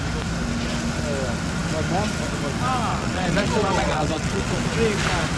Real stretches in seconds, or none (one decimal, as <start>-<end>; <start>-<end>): 0.0-2.9; 4.6-5.4